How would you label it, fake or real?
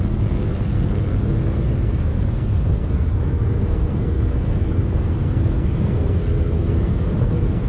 fake